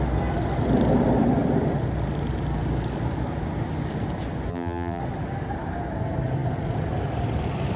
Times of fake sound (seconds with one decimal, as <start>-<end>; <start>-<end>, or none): 4.5-5.0